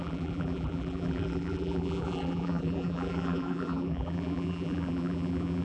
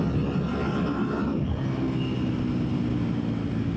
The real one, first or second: second